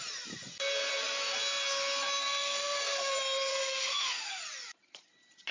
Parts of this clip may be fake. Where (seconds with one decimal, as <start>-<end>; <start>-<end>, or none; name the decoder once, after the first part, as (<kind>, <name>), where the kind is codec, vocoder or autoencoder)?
2.2-3.1 (codec, SNAC); 3.5-4.4